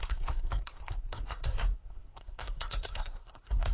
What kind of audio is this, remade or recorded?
remade